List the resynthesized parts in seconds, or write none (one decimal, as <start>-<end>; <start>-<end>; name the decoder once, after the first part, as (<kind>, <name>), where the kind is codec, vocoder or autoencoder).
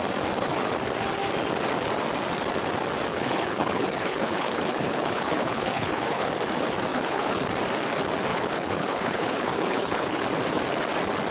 3.1-6.3 (codec, HILCodec); 6.9-7.5; 8.3-10.2